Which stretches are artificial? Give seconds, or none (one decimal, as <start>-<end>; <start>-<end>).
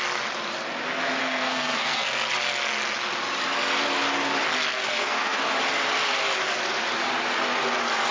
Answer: 1.2-2.3; 4.7-5.4